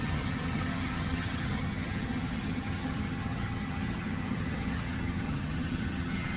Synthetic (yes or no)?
yes